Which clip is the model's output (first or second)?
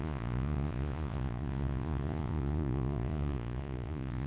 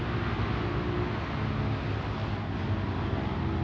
first